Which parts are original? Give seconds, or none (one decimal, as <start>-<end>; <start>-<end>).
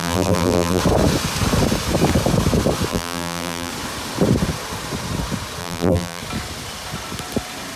0.8-2.9; 3.7-5.6; 6.2-7.8